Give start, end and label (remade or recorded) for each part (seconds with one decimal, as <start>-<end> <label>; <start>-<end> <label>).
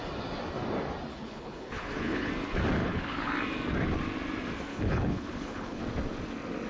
0.0-1.1 recorded; 1.1-2.3 remade; 2.3-2.8 recorded; 2.8-3.3 remade; 3.3-4.7 recorded; 4.7-5.8 remade; 5.8-6.7 recorded